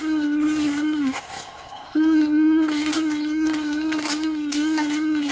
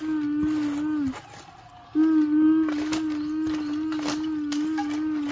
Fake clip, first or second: first